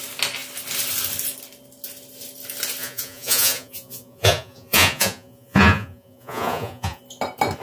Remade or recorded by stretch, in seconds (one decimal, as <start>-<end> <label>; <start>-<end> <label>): 0.0-2.8 recorded; 2.8-7.0 remade; 7.0-7.6 recorded